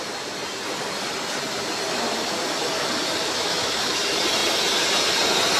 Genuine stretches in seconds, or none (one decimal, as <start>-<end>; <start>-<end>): 0.0-3.2; 4.0-5.6

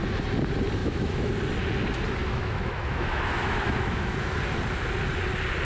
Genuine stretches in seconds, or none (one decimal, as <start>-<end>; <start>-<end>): 0.0-0.8; 1.3-2.2; 4.3-5.6

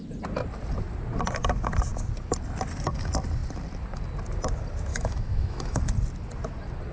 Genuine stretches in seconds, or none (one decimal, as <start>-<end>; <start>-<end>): 0.0-4.9; 5.8-6.9